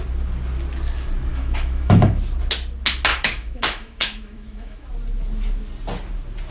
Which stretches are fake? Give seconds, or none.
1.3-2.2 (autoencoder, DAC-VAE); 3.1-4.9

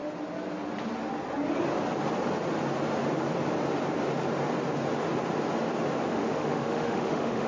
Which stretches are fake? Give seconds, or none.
6.1-7.5 (autoencoder, DAC-VAE)

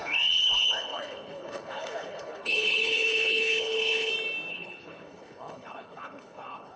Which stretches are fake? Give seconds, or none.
0.0-4.1 (codec, HILCodec); 4.5-6.8